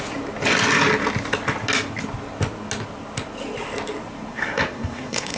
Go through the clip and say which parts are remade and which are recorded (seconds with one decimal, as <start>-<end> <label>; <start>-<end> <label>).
0.0-4.3 recorded; 4.3-5.4 remade